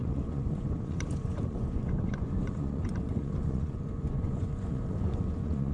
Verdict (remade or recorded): remade